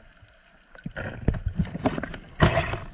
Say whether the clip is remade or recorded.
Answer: recorded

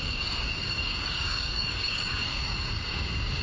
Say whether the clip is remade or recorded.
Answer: remade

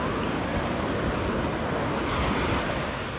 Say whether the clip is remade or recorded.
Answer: recorded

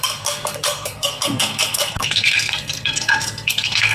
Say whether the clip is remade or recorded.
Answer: remade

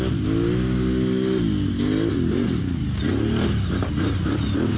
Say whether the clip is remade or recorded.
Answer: recorded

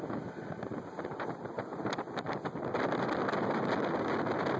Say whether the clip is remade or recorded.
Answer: recorded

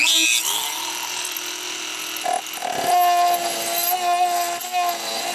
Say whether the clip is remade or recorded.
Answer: recorded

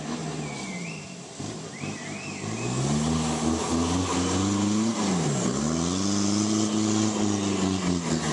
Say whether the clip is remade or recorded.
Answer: recorded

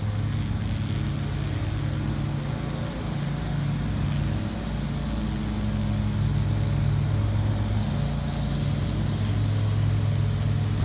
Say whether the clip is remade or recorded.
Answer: recorded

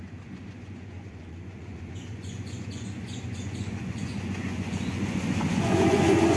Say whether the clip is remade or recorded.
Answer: remade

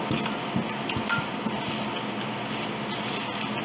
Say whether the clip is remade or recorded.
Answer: recorded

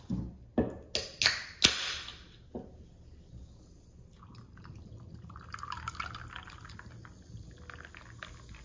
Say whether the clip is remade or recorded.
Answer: recorded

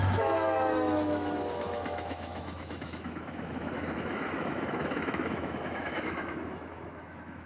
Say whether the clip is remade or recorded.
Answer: remade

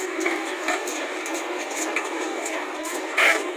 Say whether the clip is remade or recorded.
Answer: remade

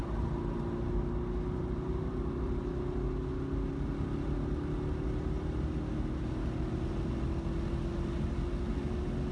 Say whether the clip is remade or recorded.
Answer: recorded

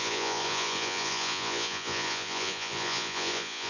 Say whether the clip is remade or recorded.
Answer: remade